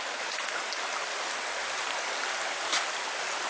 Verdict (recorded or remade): recorded